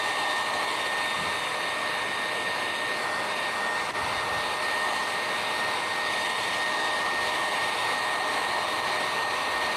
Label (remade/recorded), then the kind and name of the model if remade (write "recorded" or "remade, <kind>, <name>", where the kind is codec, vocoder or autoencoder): recorded